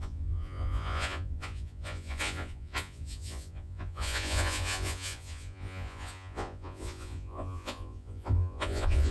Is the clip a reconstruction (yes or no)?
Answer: yes